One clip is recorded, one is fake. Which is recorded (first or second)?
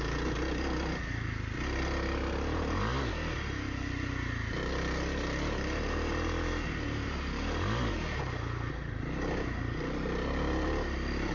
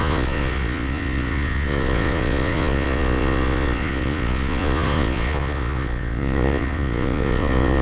first